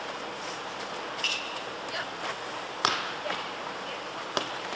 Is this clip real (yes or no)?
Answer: no